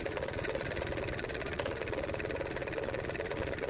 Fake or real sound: fake